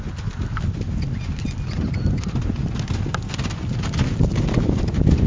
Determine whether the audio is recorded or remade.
recorded